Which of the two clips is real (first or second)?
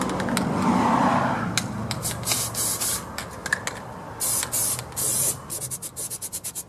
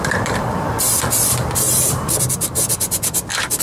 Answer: first